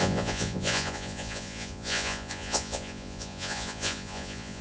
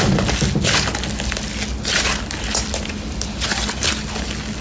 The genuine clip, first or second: second